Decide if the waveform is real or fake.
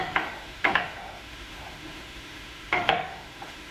fake